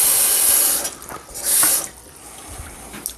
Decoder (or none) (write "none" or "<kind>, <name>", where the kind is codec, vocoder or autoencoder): none